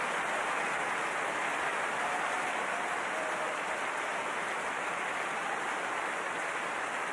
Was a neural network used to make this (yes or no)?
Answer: no